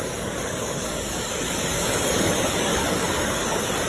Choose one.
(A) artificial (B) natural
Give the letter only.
A